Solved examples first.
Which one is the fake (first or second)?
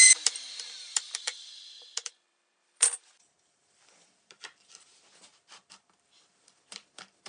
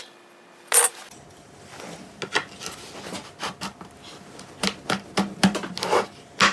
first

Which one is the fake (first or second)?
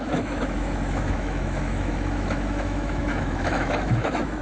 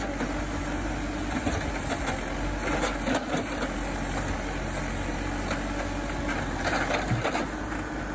first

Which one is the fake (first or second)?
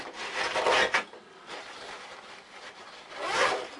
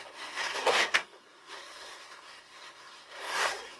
second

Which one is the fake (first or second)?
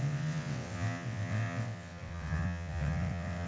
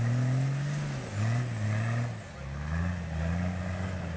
first